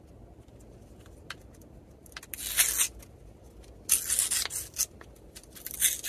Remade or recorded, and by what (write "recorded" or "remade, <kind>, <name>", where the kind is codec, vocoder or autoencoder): recorded